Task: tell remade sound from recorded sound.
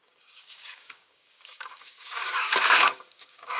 remade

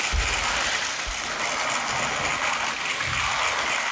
recorded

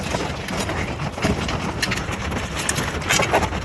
recorded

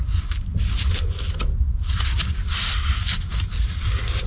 recorded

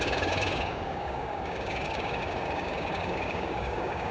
remade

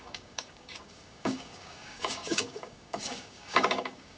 remade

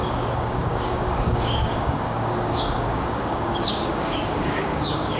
remade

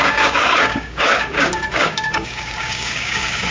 remade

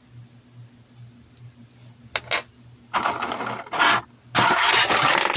recorded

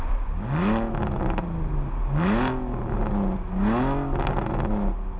recorded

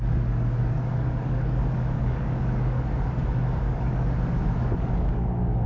remade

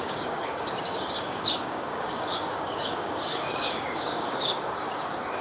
remade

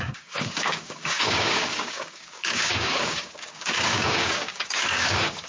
remade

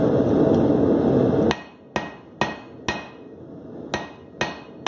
recorded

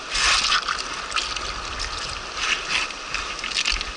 recorded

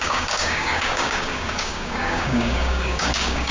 remade